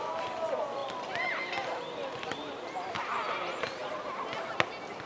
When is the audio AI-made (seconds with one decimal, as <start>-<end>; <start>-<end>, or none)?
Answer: none

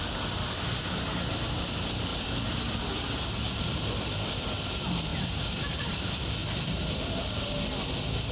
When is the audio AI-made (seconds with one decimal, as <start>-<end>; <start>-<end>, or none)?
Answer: 2.1-2.8; 6.4-7.5